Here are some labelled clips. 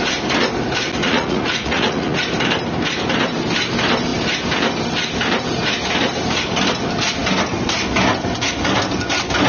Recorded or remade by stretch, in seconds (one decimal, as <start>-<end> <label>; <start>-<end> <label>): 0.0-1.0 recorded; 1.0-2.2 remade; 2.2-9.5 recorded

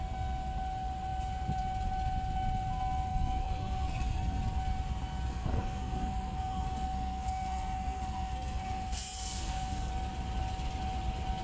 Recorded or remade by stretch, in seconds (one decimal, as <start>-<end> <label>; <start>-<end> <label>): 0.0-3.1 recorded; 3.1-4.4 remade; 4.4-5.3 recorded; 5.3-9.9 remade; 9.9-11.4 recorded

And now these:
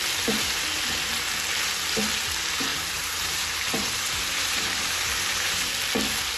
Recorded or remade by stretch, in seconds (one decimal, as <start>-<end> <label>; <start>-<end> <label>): 0.0-2.7 recorded; 2.7-5.7 remade; 5.7-6.4 recorded

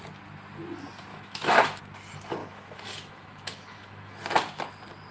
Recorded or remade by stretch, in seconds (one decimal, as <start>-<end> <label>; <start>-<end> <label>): 0.0-1.1 recorded; 1.1-1.8 remade; 1.8-2.4 recorded; 2.4-4.2 remade; 4.2-5.1 recorded